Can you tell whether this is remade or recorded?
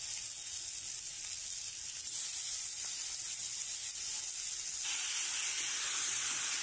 recorded